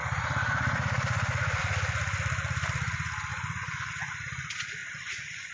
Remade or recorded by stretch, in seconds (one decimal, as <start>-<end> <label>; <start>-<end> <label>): 0.0-3.3 recorded; 3.3-3.9 remade; 3.9-4.8 recorded; 4.8-5.5 remade